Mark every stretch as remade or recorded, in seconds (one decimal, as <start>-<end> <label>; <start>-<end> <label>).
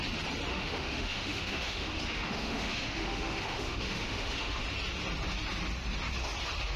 0.0-0.5 recorded; 0.5-4.6 remade; 4.6-6.8 recorded